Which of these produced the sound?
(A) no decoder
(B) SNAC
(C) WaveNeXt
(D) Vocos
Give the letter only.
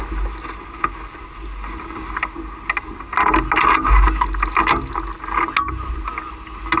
A